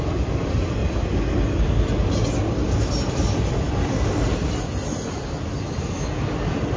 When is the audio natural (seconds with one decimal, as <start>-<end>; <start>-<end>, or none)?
0.0-6.8